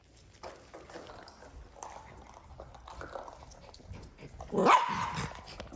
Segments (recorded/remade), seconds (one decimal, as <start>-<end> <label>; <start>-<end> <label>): 0.0-5.8 recorded